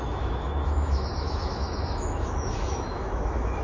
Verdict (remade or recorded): remade